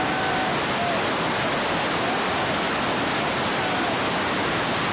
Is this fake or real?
real